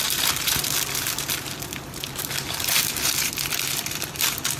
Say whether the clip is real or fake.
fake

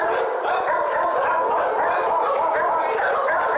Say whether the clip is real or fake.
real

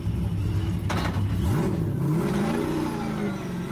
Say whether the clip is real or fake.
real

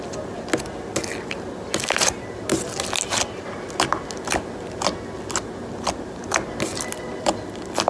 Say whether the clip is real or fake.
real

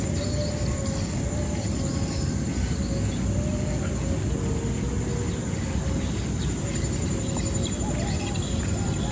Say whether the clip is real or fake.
real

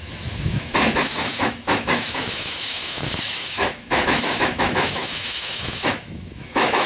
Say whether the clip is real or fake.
fake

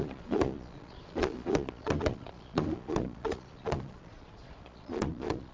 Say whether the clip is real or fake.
fake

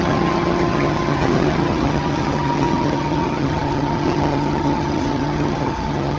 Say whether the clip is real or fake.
fake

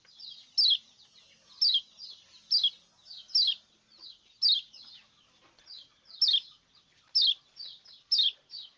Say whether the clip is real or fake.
real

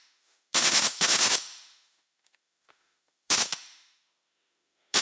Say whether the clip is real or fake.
fake